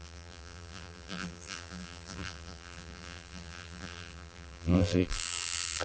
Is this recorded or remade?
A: remade